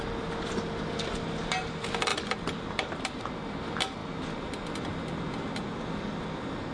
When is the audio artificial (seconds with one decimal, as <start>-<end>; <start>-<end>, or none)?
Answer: 2.1-3.2